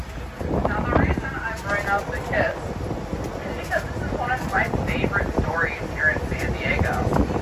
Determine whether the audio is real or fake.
real